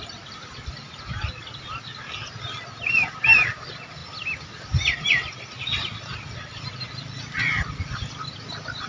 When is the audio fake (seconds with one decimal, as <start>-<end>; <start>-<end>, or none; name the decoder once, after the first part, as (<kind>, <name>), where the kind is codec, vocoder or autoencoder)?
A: none